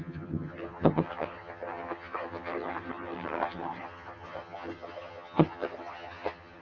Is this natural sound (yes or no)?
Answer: no